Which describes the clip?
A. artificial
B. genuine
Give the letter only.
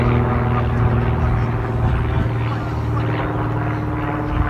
B